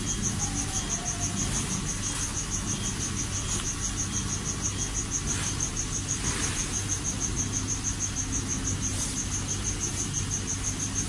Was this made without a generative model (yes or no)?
yes